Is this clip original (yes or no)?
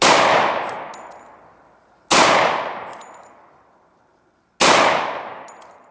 yes